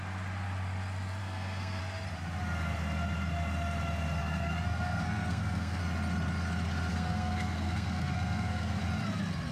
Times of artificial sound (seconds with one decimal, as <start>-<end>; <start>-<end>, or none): 1.2-1.8; 4.2-5.8; 6.9-8.8